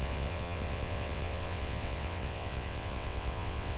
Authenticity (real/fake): fake